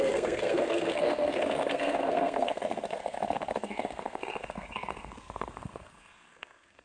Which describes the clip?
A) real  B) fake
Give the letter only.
B